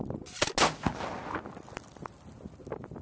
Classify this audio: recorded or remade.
recorded